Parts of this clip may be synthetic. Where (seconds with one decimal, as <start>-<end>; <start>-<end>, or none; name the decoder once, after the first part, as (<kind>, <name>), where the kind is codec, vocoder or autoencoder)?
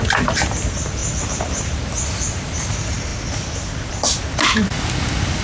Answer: 1.0-1.8 (vocoder, BigVGAN v2)